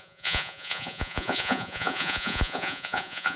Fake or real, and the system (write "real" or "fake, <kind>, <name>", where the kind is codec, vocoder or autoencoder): fake, vocoder, Vocos